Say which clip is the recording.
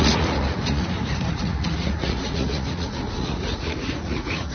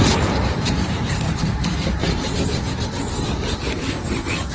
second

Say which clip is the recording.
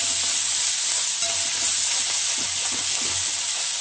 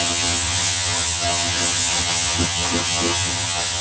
first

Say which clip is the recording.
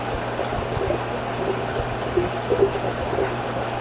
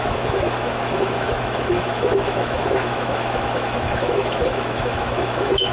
first